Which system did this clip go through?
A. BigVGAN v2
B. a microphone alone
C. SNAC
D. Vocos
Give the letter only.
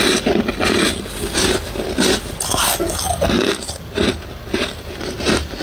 B